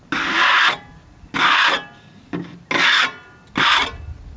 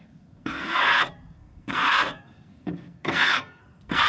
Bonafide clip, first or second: first